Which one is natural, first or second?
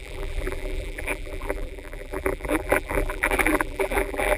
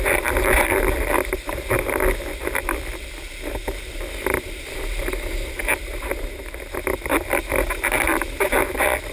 second